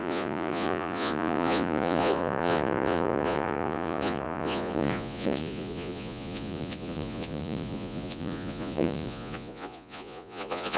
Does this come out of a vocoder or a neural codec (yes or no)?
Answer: yes